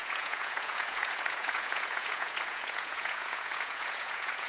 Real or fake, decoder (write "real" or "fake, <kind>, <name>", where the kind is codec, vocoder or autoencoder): fake, vocoder, Vocos